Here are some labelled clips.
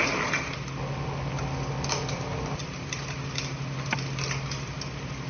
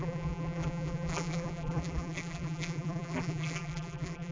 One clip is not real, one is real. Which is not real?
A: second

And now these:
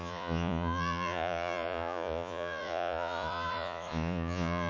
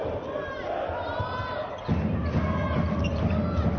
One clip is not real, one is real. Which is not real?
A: first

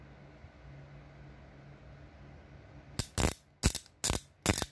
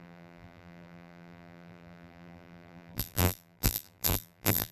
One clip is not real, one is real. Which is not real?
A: second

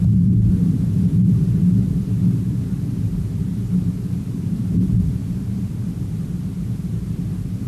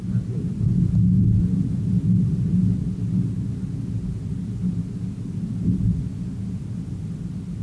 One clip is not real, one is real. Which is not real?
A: first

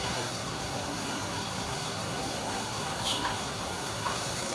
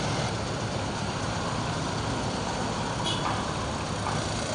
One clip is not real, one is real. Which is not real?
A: first